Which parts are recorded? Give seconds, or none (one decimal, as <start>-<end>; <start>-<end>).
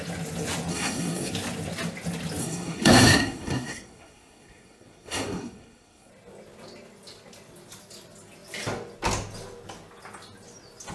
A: 0.0-0.7; 1.3-2.4; 6.1-10.9